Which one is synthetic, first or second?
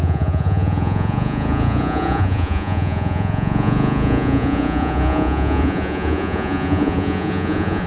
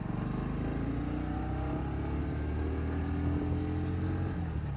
first